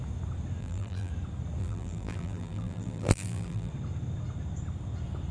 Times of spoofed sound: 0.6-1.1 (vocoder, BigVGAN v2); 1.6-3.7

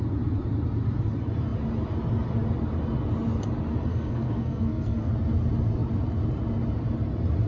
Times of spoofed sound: 3.9-5.1 (codec, SNAC)